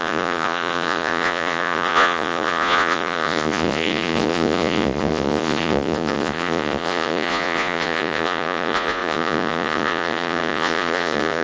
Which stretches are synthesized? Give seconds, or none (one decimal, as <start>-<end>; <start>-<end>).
0.0-11.4